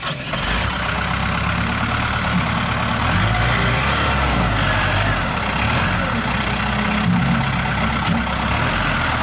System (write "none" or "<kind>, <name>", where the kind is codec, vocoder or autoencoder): none